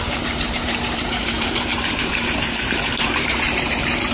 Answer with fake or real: fake